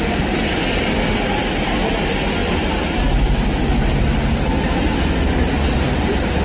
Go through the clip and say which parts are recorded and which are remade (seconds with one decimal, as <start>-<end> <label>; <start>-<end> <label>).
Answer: 0.0-6.4 recorded